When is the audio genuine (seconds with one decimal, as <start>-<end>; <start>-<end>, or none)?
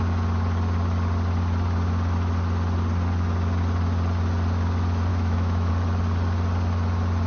0.0-5.1; 5.7-7.3